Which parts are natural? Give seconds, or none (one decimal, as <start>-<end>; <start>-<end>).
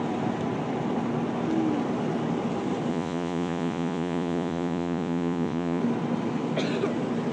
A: 0.0-2.9; 5.8-7.3